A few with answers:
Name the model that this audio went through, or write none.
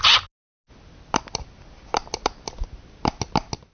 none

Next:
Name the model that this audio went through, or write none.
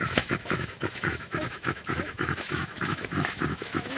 autoencoder, DAC-VAE